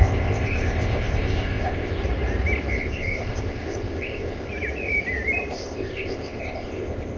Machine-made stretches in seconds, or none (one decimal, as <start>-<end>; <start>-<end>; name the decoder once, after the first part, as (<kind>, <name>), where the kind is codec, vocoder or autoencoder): 0.0-2.0 (codec, ZipCodec); 2.8-4.5; 5.5-7.2